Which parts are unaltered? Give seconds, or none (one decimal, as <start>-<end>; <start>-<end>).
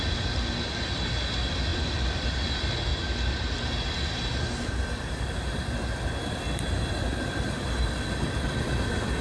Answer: 0.0-1.7; 2.5-2.9; 4.3-9.2